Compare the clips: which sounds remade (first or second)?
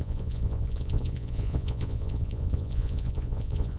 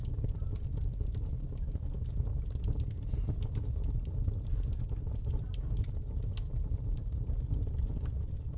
first